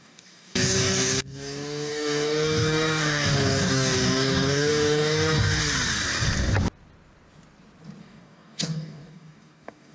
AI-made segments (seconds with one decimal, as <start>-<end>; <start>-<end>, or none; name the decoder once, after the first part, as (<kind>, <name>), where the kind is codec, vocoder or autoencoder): 0.0-5.6 (codec, DAC); 8.0-9.9